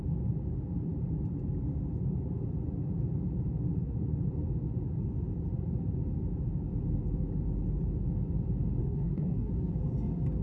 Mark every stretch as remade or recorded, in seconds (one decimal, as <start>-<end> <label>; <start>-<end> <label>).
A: 0.0-8.8 recorded; 8.8-9.5 remade; 9.5-10.4 recorded